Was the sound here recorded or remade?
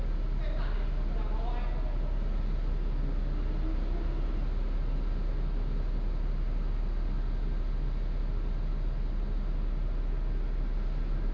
recorded